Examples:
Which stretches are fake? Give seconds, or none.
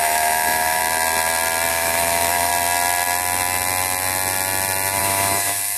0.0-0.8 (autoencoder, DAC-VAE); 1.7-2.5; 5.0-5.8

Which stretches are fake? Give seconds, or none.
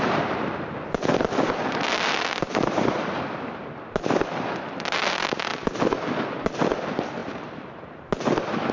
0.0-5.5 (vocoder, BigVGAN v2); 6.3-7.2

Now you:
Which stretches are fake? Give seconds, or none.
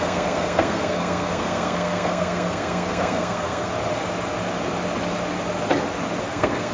0.0-3.7 (codec, SNAC); 6.2-6.7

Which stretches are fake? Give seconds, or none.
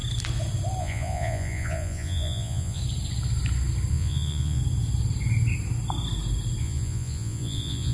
0.8-2.8 (vocoder, Vocos); 3.9-4.6; 6.6-7.9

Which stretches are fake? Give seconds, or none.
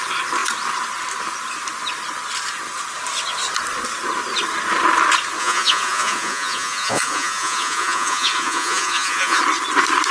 5.4-9.4 (vocoder, Vocos)